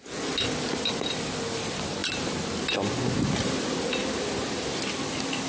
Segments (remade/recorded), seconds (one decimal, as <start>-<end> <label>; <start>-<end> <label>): 0.0-5.5 recorded